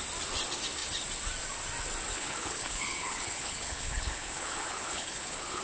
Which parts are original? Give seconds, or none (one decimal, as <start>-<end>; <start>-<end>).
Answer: 0.0-2.1